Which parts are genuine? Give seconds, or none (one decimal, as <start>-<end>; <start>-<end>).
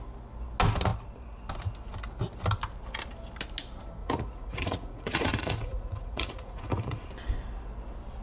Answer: 0.0-4.0; 7.1-8.2